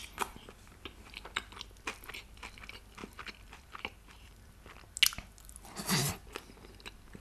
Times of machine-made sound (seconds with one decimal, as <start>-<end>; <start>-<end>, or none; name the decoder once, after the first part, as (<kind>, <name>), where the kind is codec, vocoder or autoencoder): none